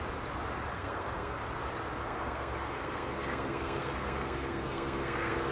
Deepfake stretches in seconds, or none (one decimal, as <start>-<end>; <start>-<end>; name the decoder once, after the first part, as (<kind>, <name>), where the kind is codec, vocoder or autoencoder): 0.7-1.4 (codec, SNAC); 2.0-5.5